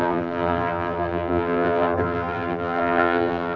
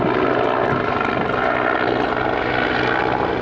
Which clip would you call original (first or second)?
second